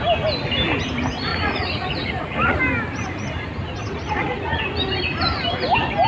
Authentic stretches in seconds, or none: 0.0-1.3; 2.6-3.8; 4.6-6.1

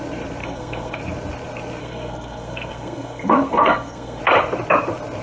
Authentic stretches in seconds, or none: 0.0-0.4; 1.0-1.8; 4.2-5.2

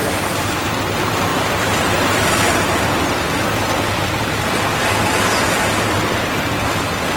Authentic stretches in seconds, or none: 0.0-7.2